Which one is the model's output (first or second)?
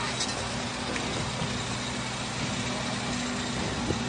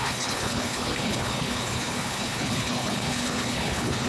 second